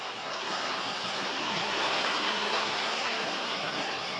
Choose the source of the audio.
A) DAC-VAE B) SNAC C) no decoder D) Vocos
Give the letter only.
B